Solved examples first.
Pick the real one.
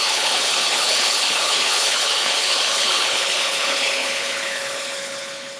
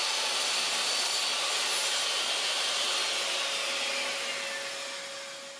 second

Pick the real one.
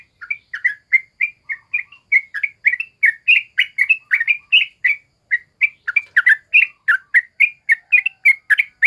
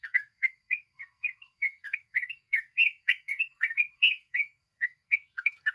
first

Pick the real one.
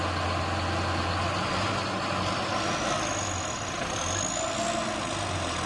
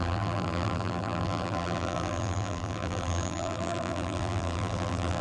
first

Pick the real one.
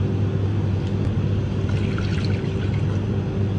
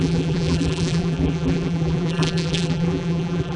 first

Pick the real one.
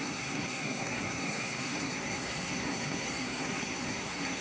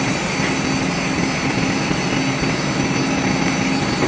second